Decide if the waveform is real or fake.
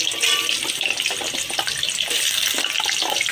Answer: real